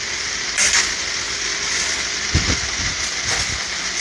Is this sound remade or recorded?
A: remade